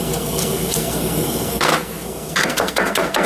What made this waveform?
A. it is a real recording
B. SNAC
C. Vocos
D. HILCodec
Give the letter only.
B